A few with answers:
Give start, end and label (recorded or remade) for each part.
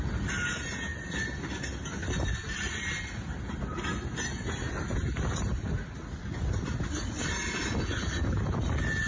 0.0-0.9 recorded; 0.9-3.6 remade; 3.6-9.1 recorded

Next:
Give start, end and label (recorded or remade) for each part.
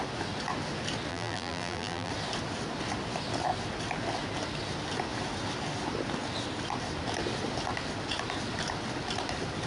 0.0-1.1 recorded; 1.1-2.1 remade; 2.1-9.7 recorded